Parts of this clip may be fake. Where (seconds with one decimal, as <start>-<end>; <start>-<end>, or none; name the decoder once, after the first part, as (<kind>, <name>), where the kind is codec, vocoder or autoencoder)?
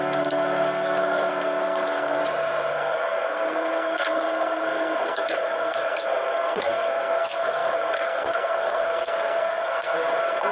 0.0-2.2 (codec, SNAC); 2.7-10.5